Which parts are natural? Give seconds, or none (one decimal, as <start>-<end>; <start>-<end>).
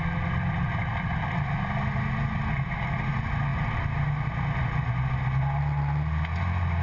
0.0-6.8